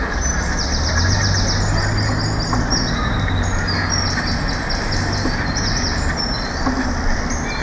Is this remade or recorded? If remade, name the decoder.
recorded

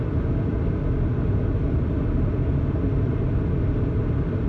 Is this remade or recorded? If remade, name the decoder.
recorded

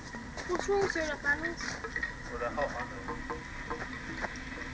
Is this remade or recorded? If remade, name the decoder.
recorded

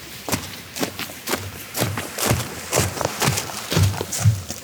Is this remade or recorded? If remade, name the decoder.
remade, vocoder, BigVGAN v2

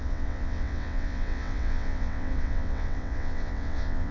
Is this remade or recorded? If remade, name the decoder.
remade, vocoder, WaveNeXt